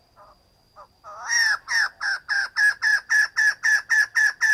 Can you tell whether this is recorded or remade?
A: recorded